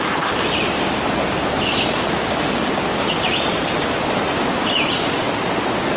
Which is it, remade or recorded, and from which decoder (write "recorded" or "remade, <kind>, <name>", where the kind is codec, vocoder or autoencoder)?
recorded